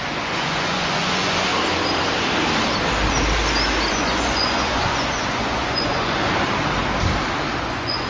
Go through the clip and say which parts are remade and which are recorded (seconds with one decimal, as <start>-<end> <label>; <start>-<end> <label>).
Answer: 0.0-1.5 remade; 1.5-3.9 recorded; 3.9-6.2 remade; 6.2-7.6 recorded; 7.6-8.1 remade